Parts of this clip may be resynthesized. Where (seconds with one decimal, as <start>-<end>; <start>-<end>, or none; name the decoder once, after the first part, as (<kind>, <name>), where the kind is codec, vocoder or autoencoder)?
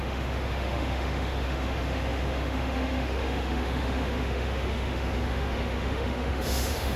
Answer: 0.0-7.0 (autoencoder, DAC-VAE)